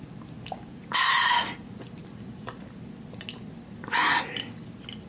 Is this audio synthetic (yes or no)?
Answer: no